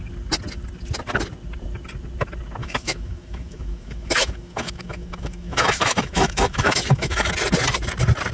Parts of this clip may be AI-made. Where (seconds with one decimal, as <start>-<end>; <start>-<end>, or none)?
2.6-7.3